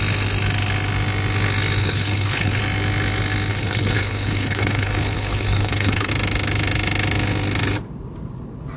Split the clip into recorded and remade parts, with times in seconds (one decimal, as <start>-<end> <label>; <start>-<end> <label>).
0.0-1.8 recorded; 1.8-2.6 remade; 2.6-3.5 recorded; 3.5-6.1 remade; 6.1-8.8 recorded